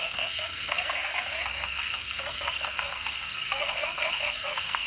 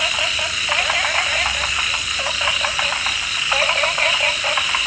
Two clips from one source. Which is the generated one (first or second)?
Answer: first